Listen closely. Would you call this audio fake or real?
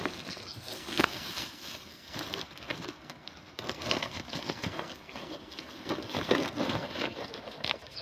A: fake